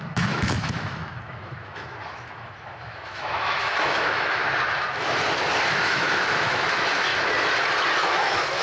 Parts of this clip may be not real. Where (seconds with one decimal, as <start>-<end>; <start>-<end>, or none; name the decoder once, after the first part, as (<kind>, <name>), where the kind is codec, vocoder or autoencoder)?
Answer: 0.0-4.4 (autoencoder, DAC-VAE); 5.7-7.1; 8.0-8.6

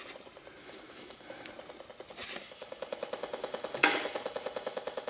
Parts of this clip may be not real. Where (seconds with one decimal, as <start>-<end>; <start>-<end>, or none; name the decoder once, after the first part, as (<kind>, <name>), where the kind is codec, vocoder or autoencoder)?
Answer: 0.6-1.5 (autoencoder, DAC-VAE); 2.4-5.1

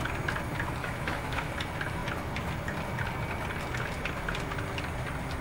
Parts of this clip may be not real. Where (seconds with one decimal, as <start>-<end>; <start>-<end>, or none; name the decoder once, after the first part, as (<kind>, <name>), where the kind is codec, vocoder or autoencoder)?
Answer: 0.8-1.5 (autoencoder, DAC-VAE)

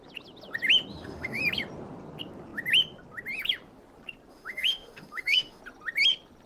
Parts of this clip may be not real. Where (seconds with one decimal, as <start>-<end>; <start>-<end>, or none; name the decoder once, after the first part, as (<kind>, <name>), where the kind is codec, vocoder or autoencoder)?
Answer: 0.9-1.4 (autoencoder, DAC-VAE); 4.3-5.6

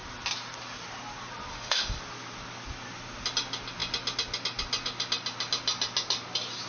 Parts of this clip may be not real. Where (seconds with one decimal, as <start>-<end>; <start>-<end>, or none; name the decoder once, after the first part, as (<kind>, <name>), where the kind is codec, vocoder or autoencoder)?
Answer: 1.5-2.0 (autoencoder, DAC-VAE)

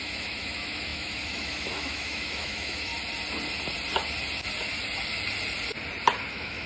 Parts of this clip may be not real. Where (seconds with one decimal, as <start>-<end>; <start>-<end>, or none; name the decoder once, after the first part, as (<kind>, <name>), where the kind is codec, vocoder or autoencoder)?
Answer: 0.0-2.9 (autoencoder, DAC-VAE); 6.3-6.7

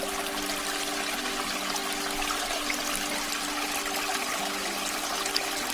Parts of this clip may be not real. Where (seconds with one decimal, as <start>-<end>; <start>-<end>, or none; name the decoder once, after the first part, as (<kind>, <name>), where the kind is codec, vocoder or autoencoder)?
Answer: none